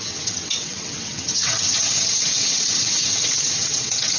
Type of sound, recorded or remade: remade